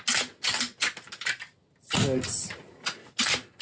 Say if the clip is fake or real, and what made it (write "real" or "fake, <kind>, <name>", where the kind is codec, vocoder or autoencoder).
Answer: real